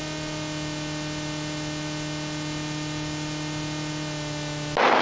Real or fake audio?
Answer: real